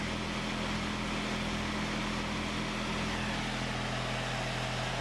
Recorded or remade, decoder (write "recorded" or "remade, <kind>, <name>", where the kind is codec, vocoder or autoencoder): recorded